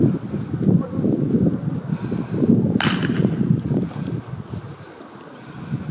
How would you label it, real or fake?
real